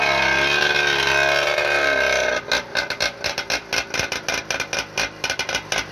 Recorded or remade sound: recorded